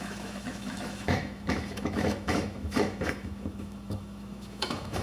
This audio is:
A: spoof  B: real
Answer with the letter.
A